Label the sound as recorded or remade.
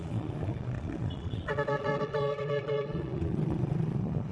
remade